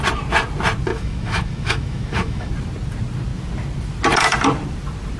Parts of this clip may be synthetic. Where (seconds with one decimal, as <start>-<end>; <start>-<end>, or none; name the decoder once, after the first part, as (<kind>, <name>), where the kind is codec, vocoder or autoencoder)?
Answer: 0.9-2.5 (autoencoder, DAC-VAE)